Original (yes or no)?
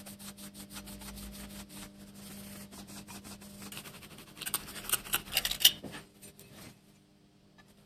yes